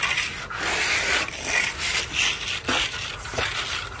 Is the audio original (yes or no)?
yes